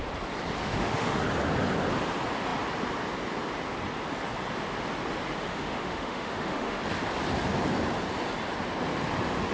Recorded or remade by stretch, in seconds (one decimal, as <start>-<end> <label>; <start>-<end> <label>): 0.0-0.6 recorded; 0.6-1.2 remade; 1.2-5.5 recorded; 5.5-6.8 remade; 6.8-9.5 recorded